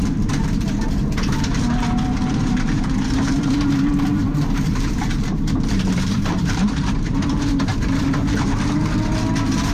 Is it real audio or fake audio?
fake